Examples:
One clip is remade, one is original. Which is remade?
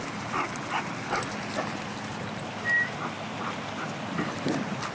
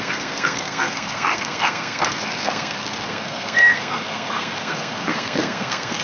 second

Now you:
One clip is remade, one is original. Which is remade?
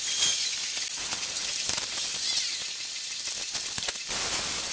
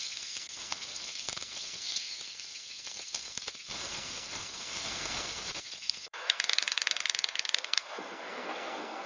second